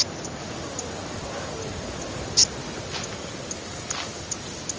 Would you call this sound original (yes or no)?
yes